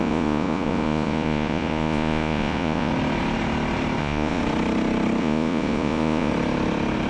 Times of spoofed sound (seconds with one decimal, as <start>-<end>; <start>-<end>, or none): 0.0-2.9; 4.0-4.4; 5.2-6.3